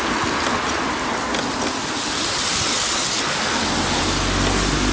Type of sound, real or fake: real